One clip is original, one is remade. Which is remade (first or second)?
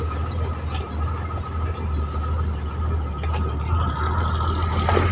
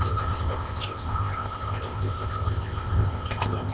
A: second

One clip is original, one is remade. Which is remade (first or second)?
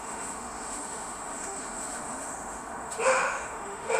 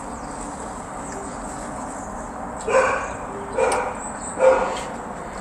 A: first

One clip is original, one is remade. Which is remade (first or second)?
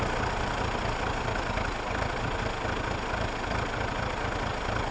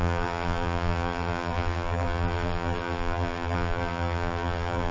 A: second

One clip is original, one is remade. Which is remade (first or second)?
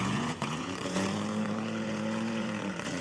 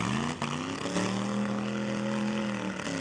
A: first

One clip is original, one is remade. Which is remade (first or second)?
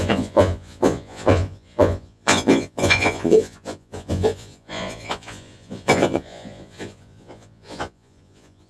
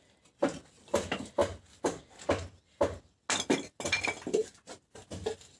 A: first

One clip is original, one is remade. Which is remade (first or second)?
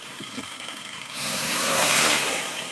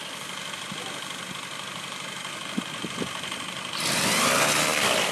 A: first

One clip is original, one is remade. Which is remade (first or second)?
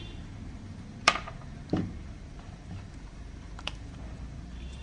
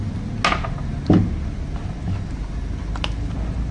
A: first